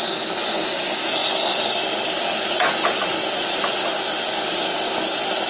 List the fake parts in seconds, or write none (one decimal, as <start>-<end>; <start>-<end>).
none